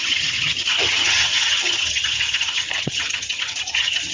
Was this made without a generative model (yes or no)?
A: no